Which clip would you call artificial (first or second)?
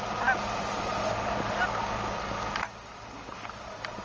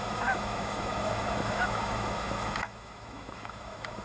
second